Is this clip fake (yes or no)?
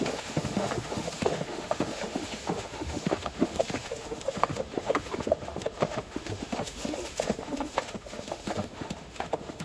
yes